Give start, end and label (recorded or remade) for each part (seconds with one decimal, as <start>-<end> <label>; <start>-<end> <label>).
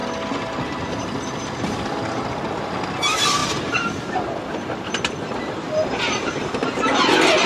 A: 0.0-7.5 recorded